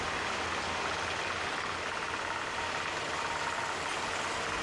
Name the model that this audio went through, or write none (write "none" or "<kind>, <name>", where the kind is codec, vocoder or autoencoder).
none